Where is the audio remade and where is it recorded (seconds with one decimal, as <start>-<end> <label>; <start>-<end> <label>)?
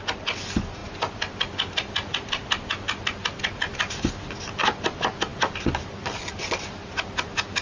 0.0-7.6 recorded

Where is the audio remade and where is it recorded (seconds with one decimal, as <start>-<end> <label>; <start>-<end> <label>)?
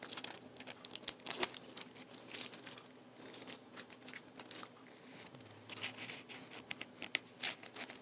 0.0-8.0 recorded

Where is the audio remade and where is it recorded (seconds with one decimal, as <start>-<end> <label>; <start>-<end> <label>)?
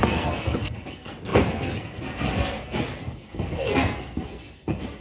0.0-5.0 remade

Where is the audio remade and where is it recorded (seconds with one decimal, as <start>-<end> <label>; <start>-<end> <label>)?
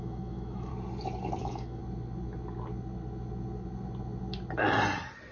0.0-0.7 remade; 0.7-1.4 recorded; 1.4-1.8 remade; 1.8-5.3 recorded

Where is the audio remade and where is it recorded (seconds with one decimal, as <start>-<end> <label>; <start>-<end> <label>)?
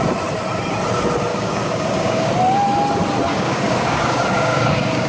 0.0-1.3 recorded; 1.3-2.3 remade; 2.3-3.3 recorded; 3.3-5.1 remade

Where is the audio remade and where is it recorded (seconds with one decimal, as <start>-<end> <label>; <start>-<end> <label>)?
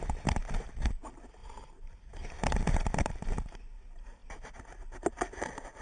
0.0-1.4 recorded; 1.4-3.6 remade; 3.6-5.8 recorded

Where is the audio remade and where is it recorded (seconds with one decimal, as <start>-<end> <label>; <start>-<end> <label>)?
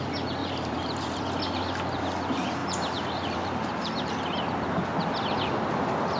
0.0-0.4 recorded; 0.4-1.2 remade; 1.2-2.6 recorded; 2.6-4.1 remade; 4.1-6.2 recorded